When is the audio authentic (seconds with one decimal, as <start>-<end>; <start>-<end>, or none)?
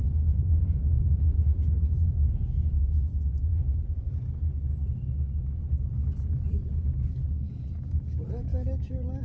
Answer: 2.7-3.5; 4.1-9.2